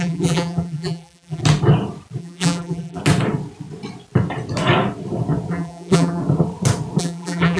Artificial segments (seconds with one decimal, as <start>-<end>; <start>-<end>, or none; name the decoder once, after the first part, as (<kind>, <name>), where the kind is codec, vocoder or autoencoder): 0.0-1.4 (vocoder, BigVGAN v2); 2.2-3.0; 5.5-6.2; 7.0-7.6